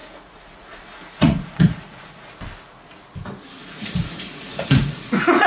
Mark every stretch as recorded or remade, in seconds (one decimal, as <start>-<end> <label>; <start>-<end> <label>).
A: 0.0-2.3 remade; 2.3-3.6 recorded; 3.6-5.5 remade